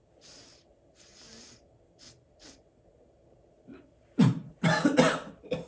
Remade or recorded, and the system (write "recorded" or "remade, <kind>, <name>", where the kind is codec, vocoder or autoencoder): recorded